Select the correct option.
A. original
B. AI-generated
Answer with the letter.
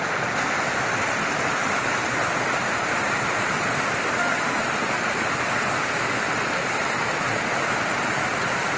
A